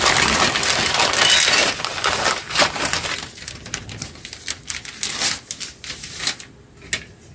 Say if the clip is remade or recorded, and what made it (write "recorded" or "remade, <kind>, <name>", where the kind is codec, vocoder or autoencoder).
recorded